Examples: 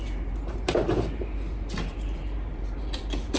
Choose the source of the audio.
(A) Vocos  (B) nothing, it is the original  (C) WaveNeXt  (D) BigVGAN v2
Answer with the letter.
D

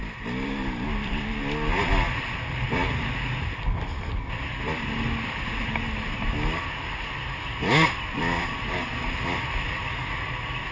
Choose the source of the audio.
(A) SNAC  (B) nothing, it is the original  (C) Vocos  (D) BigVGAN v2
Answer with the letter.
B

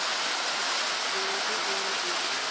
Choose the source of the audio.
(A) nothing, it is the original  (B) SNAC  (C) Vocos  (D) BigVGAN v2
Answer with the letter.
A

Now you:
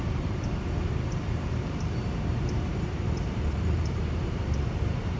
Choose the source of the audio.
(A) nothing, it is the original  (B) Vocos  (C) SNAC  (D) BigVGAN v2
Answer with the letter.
D